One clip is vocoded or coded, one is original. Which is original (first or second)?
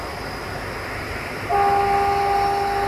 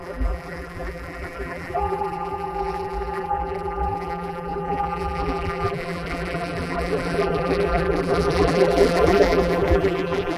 first